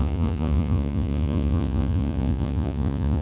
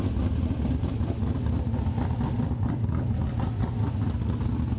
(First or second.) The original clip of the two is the second